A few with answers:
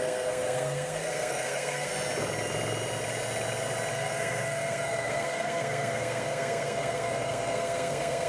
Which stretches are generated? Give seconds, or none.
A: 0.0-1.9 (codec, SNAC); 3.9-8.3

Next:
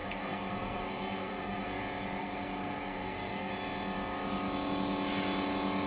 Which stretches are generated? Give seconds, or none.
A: 0.0-1.8 (codec, SNAC); 2.2-3.5

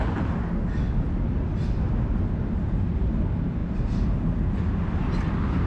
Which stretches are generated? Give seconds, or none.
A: none

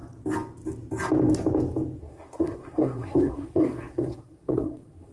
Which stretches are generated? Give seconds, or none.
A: 2.0-5.1 (codec, SNAC)

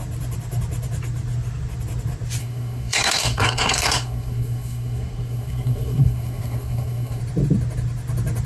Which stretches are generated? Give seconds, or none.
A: 2.4-7.2 (codec, SNAC)

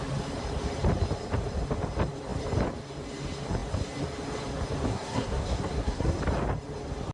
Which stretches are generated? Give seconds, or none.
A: 4.9-6.2 (codec, SNAC)

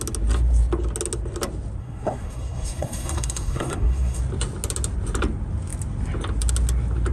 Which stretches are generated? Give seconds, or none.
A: 1.8-4.2 (codec, SNAC)

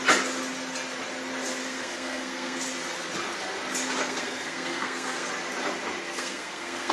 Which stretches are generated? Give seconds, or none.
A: 1.6-2.6 (codec, SNAC); 4.0-5.3; 6.0-6.9